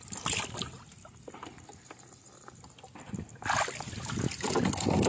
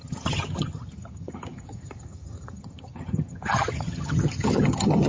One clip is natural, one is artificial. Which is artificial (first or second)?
second